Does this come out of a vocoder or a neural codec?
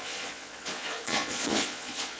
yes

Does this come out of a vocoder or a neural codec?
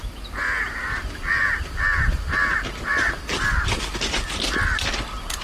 no